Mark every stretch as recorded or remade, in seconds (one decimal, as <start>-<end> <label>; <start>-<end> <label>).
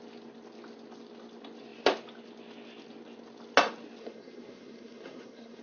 0.0-4.0 recorded; 4.0-5.6 remade